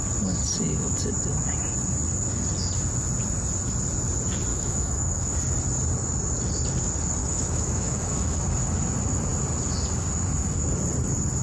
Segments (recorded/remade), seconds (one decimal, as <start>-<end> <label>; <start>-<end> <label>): 0.0-4.5 recorded; 4.5-5.3 remade; 5.3-7.2 recorded; 7.2-8.4 remade; 8.4-11.4 recorded